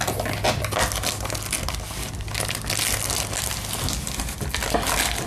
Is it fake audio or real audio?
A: real